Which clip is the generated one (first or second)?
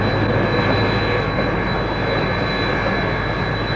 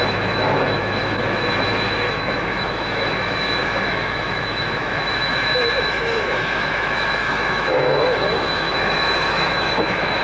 second